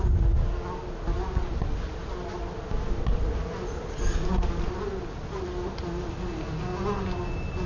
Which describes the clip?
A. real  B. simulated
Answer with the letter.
A